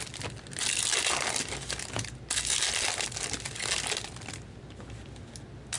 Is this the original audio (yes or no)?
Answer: yes